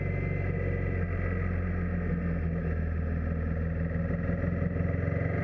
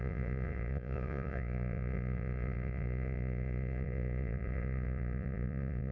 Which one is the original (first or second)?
first